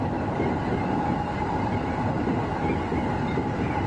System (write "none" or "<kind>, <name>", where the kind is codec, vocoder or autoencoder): none